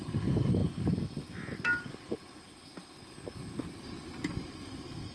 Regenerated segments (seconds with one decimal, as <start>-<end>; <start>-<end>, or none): 0.0-0.6; 3.7-5.1